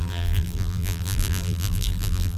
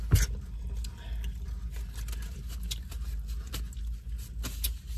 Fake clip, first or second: first